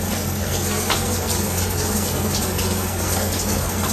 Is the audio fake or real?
fake